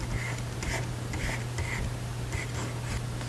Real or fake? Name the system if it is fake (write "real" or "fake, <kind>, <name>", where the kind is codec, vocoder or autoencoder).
real